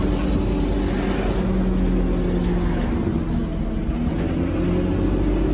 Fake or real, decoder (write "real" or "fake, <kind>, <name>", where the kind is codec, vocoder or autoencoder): real